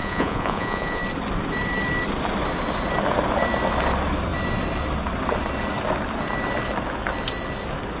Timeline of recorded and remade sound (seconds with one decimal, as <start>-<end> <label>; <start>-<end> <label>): 0.0-1.0 remade; 1.0-8.0 recorded